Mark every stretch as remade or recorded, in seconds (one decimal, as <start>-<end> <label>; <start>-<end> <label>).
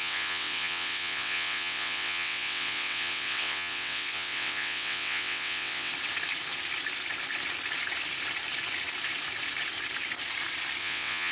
0.0-5.9 remade; 5.9-10.8 recorded; 10.8-11.3 remade